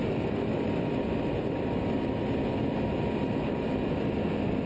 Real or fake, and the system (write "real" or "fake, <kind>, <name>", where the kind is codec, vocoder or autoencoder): real